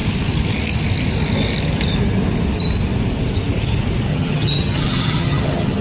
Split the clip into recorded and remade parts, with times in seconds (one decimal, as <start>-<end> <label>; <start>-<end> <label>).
0.0-4.1 recorded; 4.1-5.8 remade